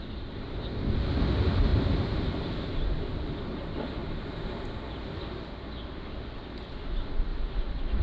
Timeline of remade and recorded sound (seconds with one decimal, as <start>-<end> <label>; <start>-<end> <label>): 0.0-1.7 recorded; 1.7-3.4 remade; 3.4-4.0 recorded; 4.0-4.7 remade; 4.7-8.0 recorded